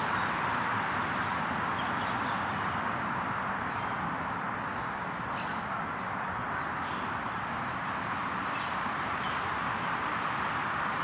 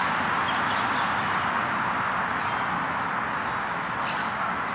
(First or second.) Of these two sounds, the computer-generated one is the first